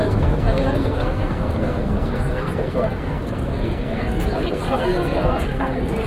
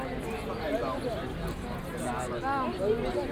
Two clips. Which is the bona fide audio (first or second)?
second